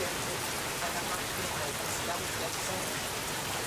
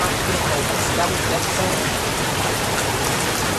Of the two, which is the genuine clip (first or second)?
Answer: first